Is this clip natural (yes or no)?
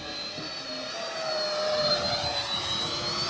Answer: yes